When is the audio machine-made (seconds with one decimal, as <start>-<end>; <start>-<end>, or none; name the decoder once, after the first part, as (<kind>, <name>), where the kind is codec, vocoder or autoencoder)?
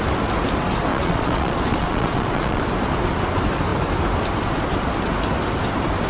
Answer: 0.9-2.6 (vocoder, Vocos)